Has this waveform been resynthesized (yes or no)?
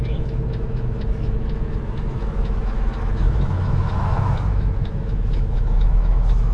yes